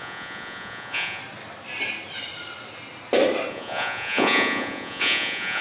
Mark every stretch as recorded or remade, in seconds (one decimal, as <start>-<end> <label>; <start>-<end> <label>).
0.0-1.2 remade; 1.2-3.5 recorded; 3.5-5.6 remade